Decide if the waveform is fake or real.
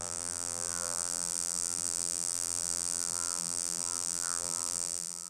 fake